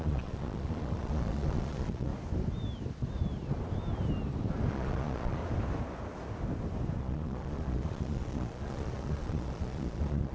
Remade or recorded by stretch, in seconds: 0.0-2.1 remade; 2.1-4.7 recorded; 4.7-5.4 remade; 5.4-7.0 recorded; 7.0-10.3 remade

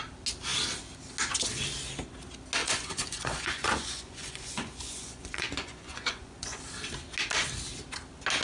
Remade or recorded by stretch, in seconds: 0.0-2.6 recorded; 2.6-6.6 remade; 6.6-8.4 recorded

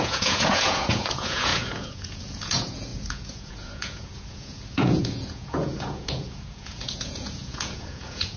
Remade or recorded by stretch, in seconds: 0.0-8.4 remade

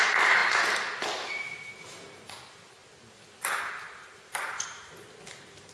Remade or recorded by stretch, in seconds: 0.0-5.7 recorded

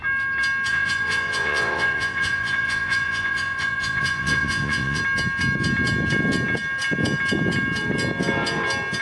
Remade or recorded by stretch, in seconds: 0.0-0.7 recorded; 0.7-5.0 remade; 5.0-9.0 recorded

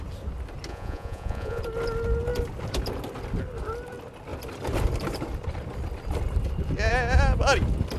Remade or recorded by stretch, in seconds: 0.0-0.7 recorded; 0.7-1.6 remade; 1.6-8.0 recorded